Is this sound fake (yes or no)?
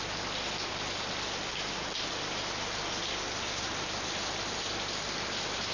no